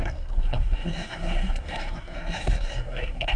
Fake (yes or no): yes